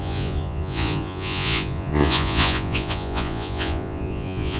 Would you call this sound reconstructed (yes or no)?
yes